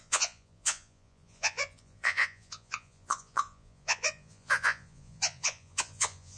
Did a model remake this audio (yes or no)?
yes